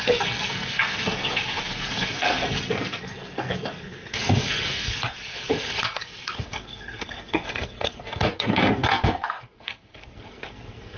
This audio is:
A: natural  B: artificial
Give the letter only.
B